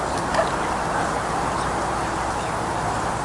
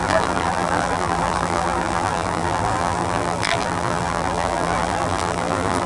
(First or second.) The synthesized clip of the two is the second